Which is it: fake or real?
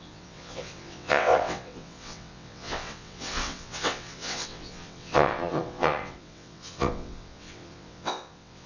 fake